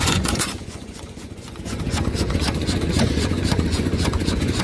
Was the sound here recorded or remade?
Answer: remade